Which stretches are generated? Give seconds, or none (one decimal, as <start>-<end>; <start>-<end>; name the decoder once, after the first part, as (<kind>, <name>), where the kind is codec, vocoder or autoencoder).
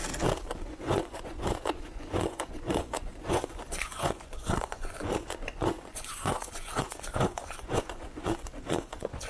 0.7-9.3 (vocoder, Vocos)